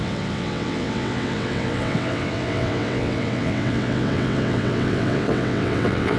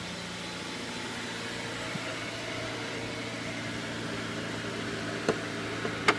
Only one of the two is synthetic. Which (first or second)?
first